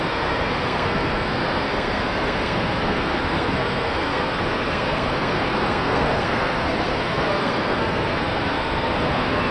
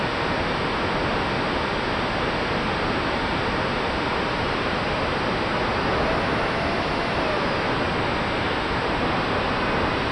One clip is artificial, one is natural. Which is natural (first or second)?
second